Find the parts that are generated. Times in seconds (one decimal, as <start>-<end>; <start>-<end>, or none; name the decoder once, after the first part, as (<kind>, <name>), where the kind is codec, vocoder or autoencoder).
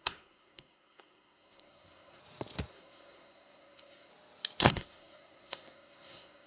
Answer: 0.0-2.2 (codec, SNAC); 2.7-4.1; 4.6-6.5